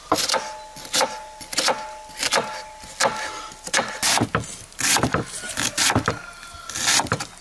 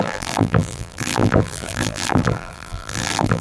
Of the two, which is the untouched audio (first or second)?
first